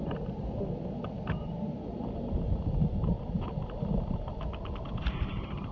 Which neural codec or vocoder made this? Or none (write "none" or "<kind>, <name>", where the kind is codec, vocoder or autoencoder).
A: none